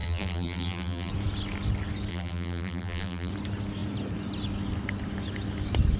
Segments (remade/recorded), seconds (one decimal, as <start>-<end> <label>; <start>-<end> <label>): 0.0-1.1 remade; 1.1-2.1 recorded; 2.1-3.3 remade; 3.3-6.0 recorded